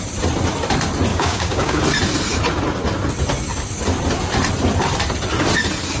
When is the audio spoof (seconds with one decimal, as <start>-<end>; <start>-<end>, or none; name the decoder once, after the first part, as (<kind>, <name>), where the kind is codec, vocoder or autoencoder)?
1.1-1.8 (codec, DAC)

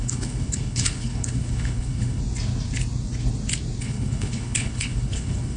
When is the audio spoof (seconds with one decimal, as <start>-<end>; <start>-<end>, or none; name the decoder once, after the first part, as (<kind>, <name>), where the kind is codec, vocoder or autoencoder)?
0.0-2.2 (codec, HILCodec); 3.8-5.6

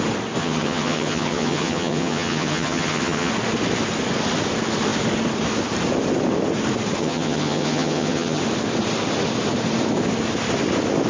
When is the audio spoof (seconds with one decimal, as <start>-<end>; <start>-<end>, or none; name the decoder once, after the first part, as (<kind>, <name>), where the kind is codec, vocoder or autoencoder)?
0.4-3.3 (vocoder, HiFi-GAN); 7.0-8.4

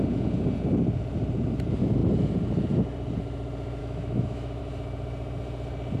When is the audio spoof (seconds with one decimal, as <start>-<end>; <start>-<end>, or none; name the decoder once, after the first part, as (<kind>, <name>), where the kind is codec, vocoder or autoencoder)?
3.8-4.6 (autoencoder, DAC-VAE)

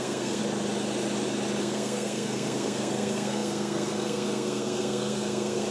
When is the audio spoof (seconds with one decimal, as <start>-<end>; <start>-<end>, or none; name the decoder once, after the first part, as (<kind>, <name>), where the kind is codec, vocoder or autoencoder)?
0.0-0.4 (codec, SNAC); 1.6-5.7

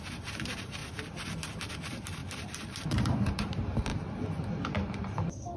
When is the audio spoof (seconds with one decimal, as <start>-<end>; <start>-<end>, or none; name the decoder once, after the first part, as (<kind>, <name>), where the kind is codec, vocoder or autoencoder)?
0.0-0.8 (vocoder, BigVGAN v2); 1.6-3.9

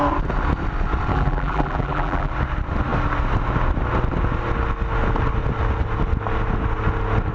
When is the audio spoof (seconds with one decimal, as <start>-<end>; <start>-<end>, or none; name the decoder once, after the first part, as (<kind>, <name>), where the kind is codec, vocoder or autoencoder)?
1.1-2.3 (vocoder, BigVGAN v2)

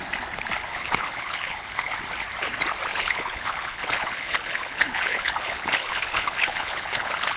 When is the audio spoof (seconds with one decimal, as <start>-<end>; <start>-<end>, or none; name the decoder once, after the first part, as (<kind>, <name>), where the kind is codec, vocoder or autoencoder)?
0.7-2.0 (codec, HILCodec); 2.9-7.4